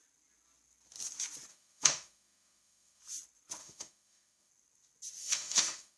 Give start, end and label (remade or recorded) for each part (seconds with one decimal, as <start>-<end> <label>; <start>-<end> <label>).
0.0-1.5 recorded; 1.5-3.0 remade; 3.0-3.6 recorded; 3.6-4.5 remade; 4.5-5.2 recorded; 5.2-6.0 remade